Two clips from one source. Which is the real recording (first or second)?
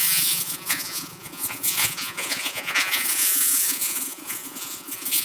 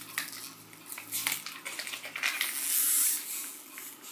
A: second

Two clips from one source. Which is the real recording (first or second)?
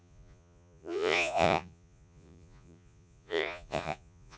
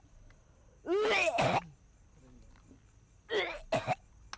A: second